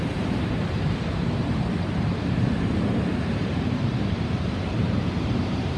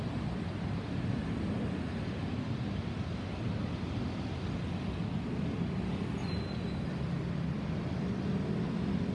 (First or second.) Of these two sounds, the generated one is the first